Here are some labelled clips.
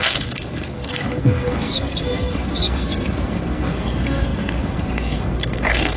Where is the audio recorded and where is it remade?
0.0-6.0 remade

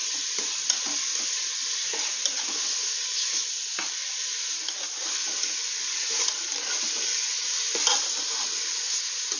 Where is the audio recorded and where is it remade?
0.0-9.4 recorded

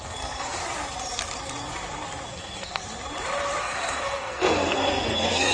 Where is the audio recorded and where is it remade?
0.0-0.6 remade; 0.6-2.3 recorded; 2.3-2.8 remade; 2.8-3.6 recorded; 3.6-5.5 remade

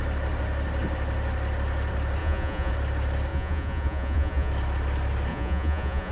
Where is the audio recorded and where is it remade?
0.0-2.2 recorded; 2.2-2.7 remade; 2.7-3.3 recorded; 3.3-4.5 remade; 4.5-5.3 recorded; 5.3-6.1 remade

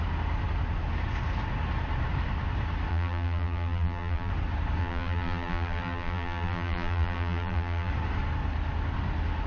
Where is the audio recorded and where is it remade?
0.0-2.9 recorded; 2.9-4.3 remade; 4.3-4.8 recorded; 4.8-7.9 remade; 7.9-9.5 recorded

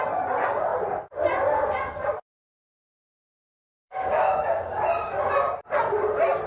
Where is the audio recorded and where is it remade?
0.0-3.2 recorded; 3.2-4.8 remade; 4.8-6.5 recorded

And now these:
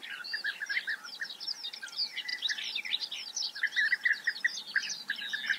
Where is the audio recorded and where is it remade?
0.0-5.6 recorded

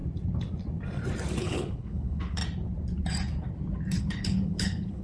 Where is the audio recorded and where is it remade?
0.0-1.4 recorded; 1.4-2.4 remade; 2.4-4.0 recorded; 4.0-5.0 remade